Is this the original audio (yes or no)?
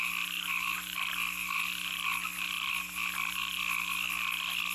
yes